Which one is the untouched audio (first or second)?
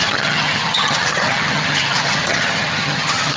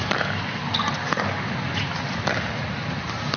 second